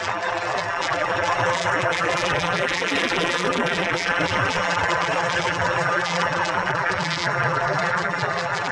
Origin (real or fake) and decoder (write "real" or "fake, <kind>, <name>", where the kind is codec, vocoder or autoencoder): fake, vocoder, BigVGAN v2